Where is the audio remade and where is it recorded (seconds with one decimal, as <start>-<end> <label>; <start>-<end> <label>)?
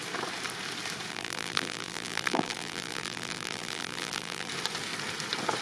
0.0-1.1 recorded; 1.1-4.5 remade; 4.5-5.6 recorded